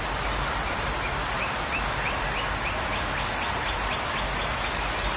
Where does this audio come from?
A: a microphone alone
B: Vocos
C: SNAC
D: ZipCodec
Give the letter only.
A